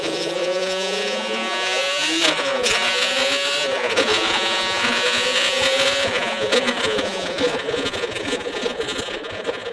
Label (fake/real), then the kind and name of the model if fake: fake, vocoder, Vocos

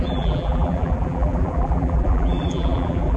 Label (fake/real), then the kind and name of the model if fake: fake, vocoder, BigVGAN v2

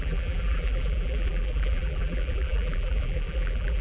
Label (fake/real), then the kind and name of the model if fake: fake, vocoder, BigVGAN v2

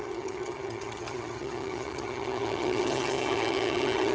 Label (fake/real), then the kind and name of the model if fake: fake, vocoder, HiFi-GAN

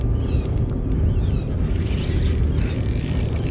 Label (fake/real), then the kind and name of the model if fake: real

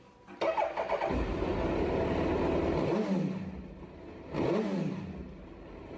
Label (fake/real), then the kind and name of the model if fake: real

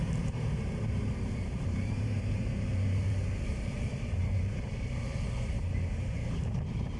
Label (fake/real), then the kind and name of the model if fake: fake, vocoder, BigVGAN v2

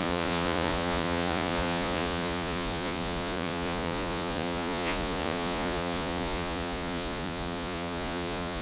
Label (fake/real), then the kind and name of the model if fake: fake, vocoder, Vocos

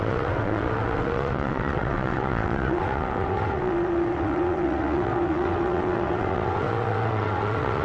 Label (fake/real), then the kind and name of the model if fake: fake, vocoder, WaveNeXt